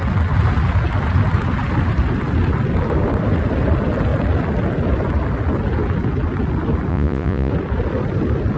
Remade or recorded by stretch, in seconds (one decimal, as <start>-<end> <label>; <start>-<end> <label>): 0.0-6.9 recorded; 6.9-7.5 remade; 7.5-8.6 recorded